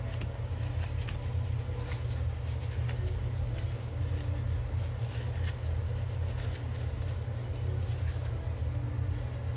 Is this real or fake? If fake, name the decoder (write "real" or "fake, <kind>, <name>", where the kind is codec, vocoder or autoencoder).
real